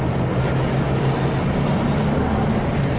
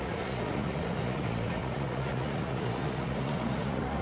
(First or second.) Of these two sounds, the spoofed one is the second